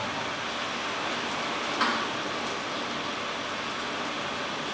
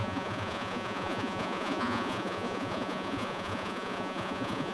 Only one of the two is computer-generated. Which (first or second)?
second